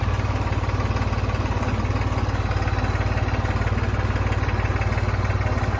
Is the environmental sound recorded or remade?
recorded